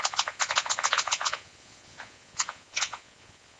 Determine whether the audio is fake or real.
fake